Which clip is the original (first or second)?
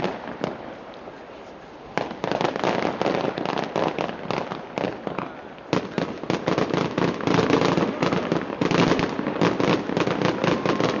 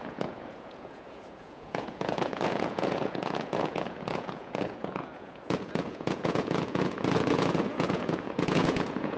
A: first